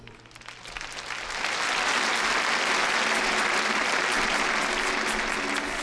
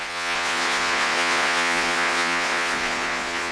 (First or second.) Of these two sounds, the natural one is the first